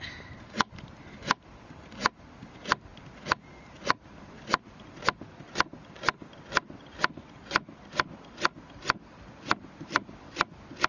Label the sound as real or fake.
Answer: real